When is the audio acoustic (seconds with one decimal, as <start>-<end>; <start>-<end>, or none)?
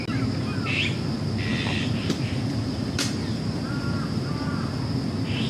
0.0-1.5; 4.8-5.5